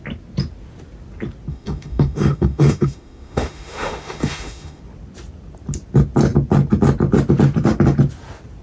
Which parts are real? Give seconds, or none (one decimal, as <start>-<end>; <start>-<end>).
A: 0.0-1.5; 4.8-8.6

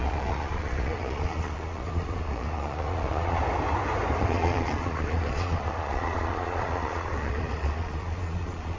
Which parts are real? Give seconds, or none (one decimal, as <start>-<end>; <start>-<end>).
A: 3.4-4.2

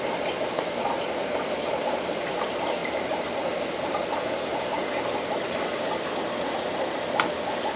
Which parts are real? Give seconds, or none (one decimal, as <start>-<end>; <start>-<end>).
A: 0.0-7.8